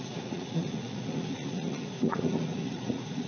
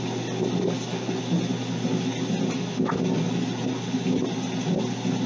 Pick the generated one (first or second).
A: first